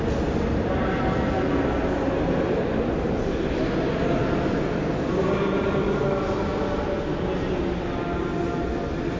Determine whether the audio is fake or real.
real